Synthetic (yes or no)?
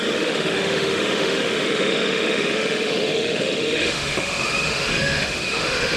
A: yes